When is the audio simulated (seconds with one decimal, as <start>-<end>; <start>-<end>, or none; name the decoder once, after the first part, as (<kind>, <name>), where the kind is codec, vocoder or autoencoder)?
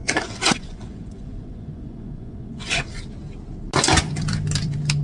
0.0-3.0 (vocoder, Vocos)